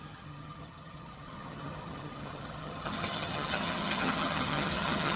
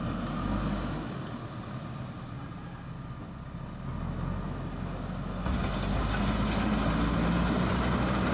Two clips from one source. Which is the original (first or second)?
second